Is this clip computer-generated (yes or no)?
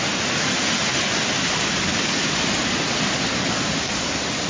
no